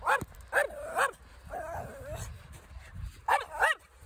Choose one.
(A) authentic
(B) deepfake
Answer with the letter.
A